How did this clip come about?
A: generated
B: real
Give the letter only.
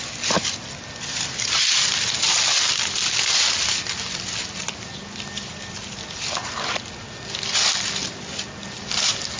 B